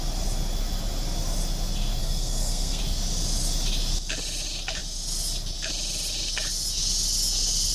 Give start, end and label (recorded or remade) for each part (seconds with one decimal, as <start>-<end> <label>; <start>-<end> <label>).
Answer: 0.0-2.0 recorded; 2.0-2.8 remade; 2.8-7.7 recorded